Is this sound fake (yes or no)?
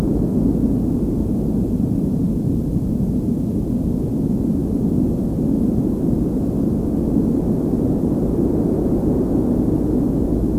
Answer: no